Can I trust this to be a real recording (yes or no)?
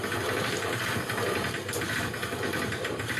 yes